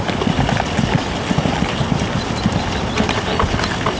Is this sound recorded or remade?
remade